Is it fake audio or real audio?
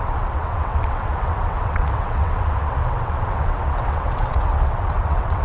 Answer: fake